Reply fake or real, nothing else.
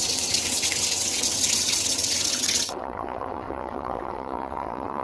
fake